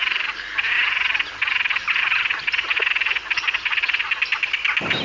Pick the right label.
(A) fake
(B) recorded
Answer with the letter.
B